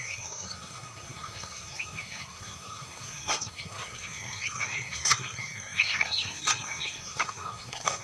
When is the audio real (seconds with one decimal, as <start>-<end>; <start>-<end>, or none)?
none